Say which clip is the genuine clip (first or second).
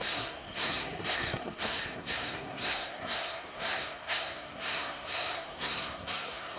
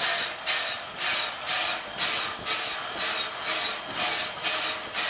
second